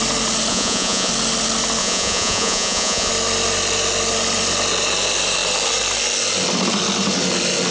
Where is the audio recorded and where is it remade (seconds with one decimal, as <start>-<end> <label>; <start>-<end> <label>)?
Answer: 0.0-0.5 recorded; 0.5-1.1 remade; 1.1-1.8 recorded; 1.8-3.1 remade; 3.1-7.7 recorded